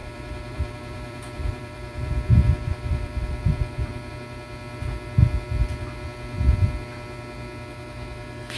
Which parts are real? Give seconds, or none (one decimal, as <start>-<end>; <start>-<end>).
4.1-8.6